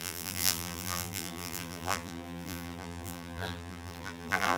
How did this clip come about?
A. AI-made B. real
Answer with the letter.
A